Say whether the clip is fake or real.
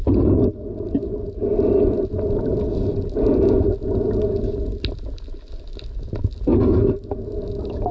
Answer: real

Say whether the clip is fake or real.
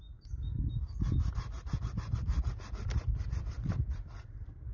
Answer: real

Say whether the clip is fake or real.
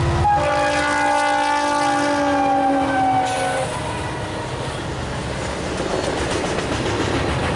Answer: real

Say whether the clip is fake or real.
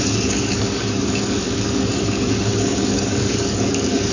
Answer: fake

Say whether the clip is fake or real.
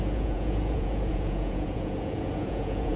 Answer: fake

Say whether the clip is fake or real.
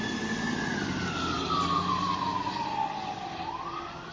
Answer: real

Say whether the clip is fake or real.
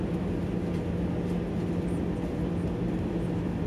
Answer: real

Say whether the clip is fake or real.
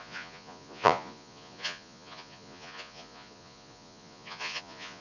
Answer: fake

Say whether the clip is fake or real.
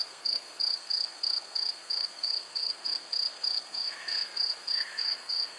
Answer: fake